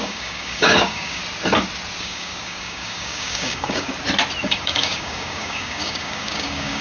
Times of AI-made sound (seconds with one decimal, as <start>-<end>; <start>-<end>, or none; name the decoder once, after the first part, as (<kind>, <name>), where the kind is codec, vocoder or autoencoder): 0.0-1.2 (codec, DAC); 2.0-3.9; 4.4-6.8